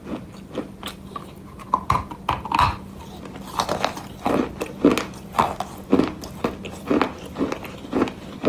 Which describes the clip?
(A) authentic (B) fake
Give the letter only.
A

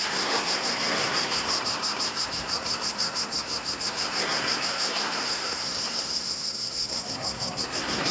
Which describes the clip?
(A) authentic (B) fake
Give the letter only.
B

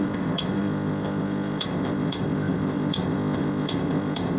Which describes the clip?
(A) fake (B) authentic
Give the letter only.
A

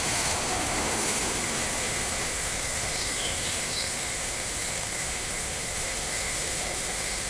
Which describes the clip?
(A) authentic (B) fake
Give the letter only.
B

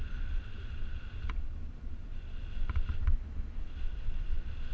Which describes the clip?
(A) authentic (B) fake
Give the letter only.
A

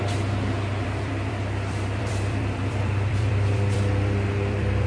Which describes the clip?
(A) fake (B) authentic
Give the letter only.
A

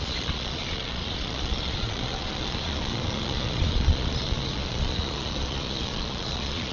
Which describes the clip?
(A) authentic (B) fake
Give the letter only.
B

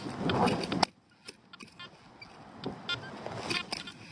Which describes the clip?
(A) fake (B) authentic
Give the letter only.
B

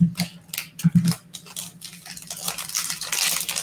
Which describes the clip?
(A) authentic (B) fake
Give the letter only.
A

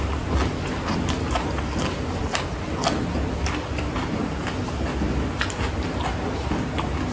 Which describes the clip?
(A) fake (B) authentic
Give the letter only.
B